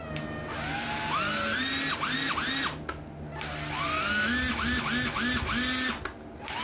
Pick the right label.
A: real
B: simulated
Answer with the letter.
A